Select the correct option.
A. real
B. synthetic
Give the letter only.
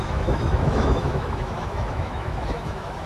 B